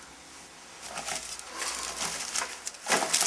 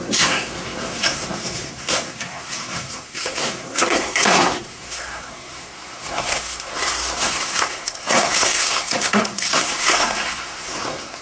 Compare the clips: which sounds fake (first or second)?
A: second